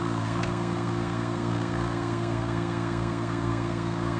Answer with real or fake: fake